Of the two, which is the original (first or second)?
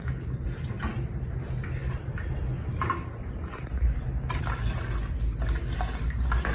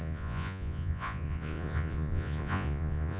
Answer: first